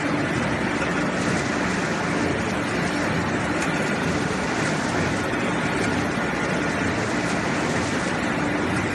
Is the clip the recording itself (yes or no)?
yes